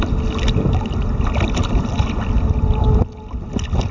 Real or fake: real